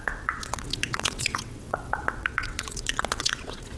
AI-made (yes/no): yes